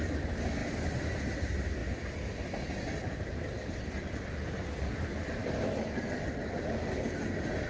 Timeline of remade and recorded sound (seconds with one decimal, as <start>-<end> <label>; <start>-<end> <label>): 0.0-7.7 recorded